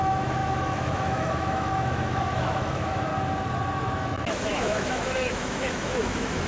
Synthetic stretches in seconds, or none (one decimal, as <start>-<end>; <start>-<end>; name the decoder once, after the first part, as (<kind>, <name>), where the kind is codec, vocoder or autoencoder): 0.0-3.1 (autoencoder, DAC-VAE); 3.8-6.5